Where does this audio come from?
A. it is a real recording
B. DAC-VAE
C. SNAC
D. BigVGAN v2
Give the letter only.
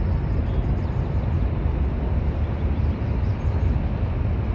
A